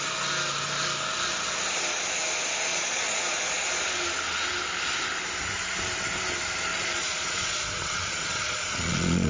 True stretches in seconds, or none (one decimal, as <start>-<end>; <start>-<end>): 0.0-2.7; 3.3-6.7